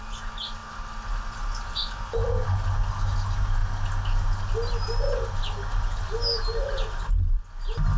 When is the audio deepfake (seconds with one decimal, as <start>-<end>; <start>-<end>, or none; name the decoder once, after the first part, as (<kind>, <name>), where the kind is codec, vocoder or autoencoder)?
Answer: none